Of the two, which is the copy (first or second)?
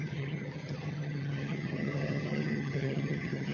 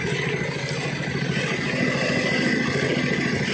first